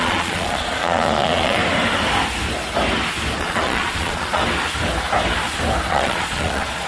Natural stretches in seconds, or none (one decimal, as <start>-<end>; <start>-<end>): 1.6-3.4; 4.4-5.9